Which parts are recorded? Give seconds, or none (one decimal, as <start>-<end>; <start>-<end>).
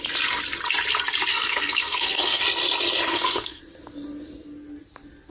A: 0.0-1.3; 2.4-3.1; 3.6-5.3